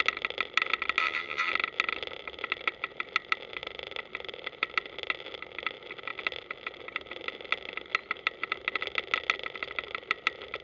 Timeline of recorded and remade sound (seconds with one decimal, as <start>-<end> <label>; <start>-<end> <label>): 0.0-1.0 recorded; 1.0-1.5 remade; 1.5-10.6 recorded